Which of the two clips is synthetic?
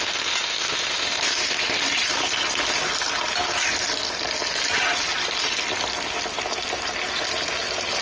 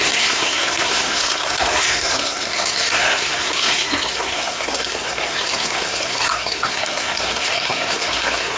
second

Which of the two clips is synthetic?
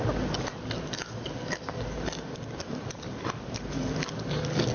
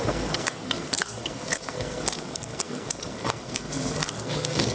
second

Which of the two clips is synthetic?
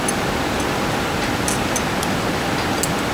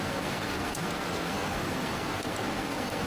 second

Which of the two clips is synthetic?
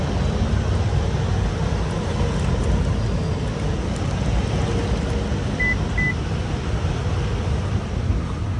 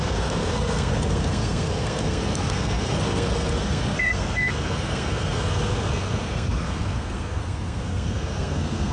second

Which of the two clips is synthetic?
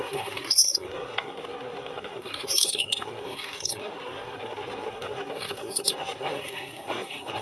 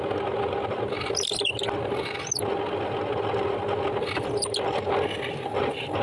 first